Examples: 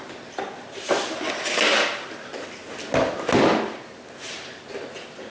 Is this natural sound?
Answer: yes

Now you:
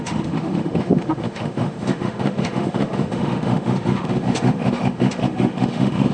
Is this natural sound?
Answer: no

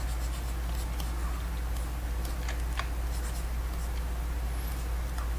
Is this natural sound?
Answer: yes